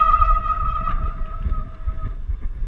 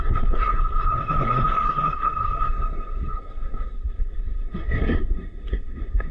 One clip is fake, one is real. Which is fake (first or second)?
second